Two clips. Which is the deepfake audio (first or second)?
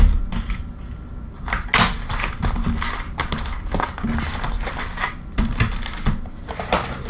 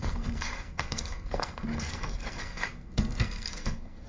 second